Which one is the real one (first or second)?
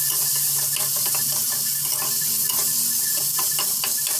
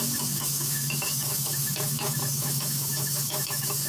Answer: first